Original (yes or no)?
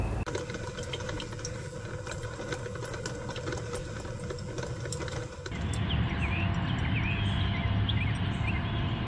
yes